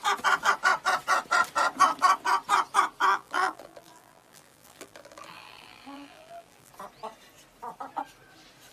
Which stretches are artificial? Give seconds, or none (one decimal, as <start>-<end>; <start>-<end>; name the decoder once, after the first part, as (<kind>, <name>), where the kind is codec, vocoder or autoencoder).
3.1-6.7 (vocoder, BigVGAN v2)